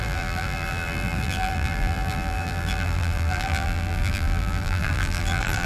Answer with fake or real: fake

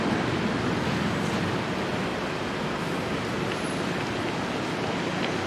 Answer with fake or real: real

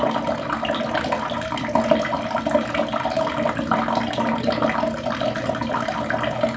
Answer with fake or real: real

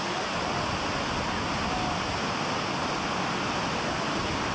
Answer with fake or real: real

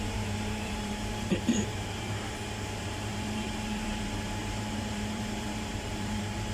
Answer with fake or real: fake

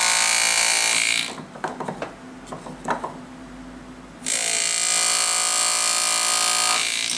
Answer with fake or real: real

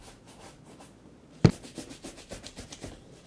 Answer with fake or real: real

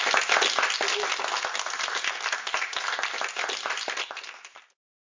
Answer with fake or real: real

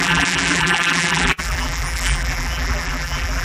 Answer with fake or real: fake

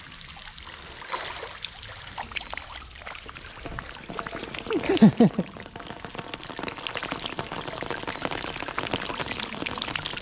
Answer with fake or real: real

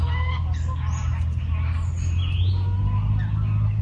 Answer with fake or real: real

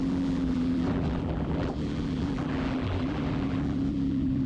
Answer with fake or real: fake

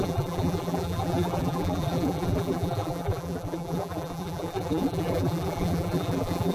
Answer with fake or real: fake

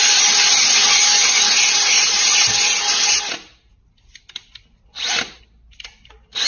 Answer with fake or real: real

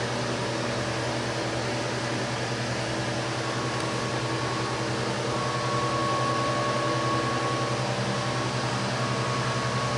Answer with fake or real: real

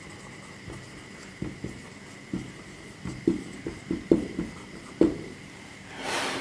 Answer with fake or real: fake